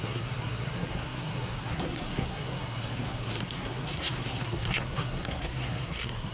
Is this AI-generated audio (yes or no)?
yes